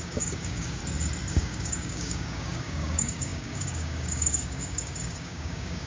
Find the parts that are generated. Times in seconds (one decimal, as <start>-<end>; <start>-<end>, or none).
0.0-0.8; 1.3-5.9

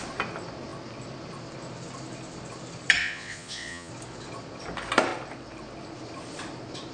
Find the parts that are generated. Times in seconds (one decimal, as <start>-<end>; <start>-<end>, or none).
3.0-3.9

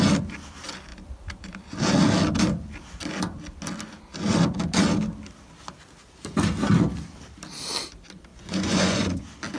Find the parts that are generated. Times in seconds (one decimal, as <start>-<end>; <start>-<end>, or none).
8.3-9.2

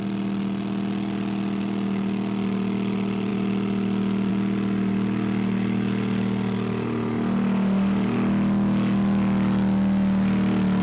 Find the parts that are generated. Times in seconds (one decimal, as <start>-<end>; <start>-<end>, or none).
none

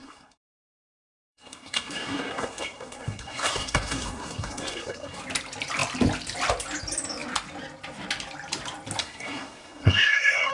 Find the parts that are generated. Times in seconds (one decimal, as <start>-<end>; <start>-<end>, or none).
0.0-5.2; 9.0-10.5

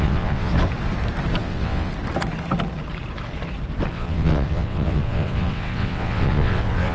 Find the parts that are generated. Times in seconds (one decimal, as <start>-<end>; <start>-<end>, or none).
0.0-0.5; 1.4-1.9; 3.9-6.9